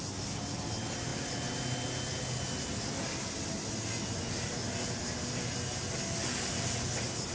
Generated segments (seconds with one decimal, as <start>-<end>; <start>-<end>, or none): none